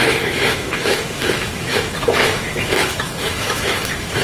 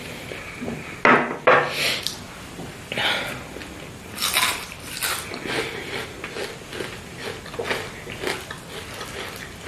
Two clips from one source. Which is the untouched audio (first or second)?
second